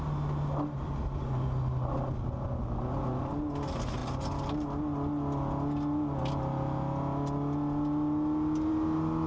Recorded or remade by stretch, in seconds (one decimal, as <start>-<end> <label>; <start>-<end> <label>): 0.0-9.3 recorded